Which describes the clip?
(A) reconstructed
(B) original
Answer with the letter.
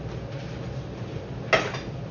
B